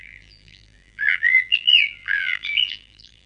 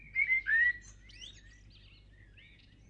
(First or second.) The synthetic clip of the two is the first